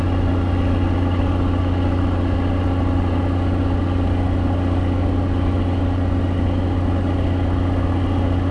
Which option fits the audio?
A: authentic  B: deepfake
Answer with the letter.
A